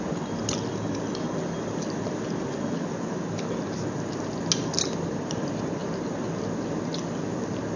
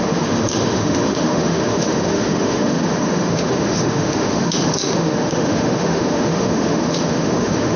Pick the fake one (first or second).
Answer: second